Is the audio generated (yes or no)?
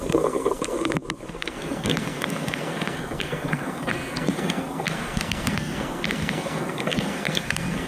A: yes